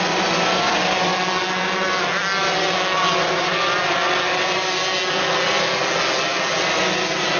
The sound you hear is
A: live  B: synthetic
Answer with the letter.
A